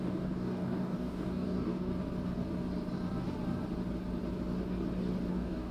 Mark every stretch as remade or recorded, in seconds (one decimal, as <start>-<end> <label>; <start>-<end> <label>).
0.0-1.9 remade; 1.9-5.3 recorded; 5.3-5.7 remade